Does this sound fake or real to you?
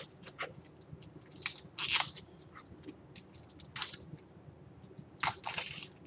real